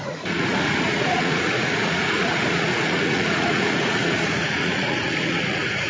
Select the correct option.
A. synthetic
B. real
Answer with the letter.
A